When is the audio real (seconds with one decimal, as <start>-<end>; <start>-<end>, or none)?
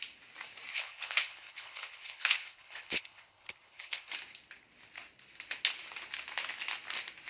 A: 0.0-0.7; 4.1-7.3